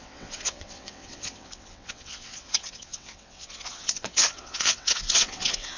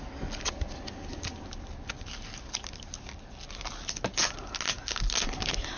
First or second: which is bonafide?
second